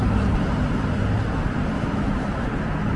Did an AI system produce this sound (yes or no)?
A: yes